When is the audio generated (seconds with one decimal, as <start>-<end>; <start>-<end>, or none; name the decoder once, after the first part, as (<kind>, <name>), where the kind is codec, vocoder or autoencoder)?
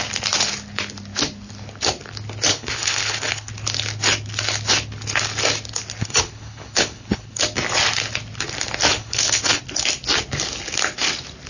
2.5-3.5 (codec, HILCodec); 6.0-7.4; 8.9-9.6